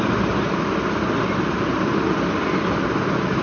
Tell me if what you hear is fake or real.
real